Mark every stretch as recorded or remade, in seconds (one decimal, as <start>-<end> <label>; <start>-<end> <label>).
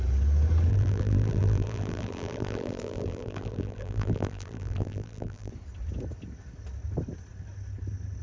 0.0-0.7 recorded; 0.7-5.5 remade; 5.5-8.2 recorded